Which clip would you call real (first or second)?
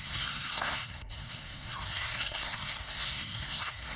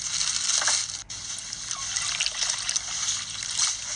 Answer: second